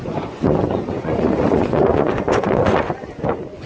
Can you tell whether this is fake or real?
fake